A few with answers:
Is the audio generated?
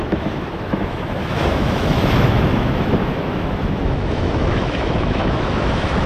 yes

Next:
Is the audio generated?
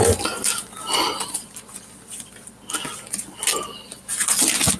no